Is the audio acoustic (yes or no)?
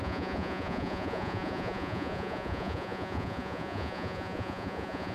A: no